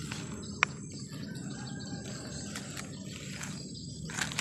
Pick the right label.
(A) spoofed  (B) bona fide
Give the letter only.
B